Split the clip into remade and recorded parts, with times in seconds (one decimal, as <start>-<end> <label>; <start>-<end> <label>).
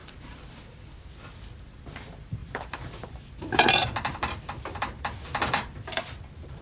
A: 0.0-1.1 remade; 1.1-2.4 recorded; 2.4-6.0 remade; 6.0-6.6 recorded